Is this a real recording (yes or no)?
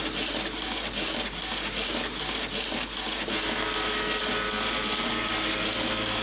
yes